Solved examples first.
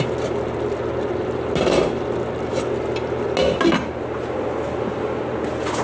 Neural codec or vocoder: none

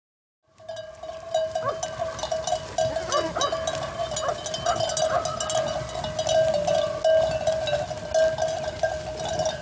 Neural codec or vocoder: none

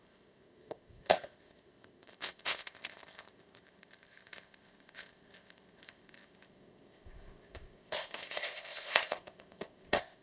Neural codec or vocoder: codec, ZipCodec